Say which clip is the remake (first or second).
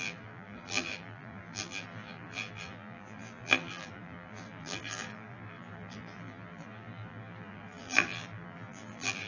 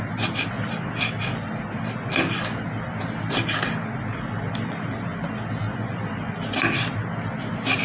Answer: first